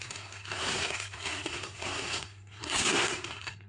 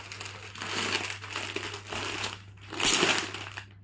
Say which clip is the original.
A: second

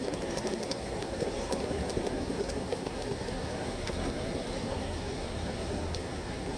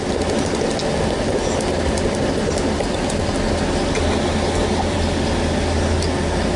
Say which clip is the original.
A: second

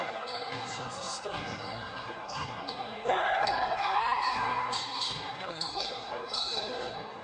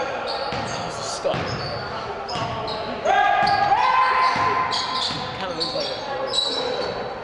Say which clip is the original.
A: second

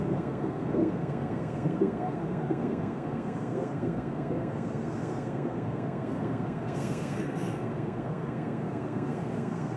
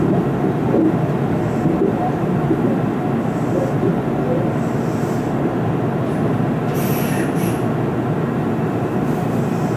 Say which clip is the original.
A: second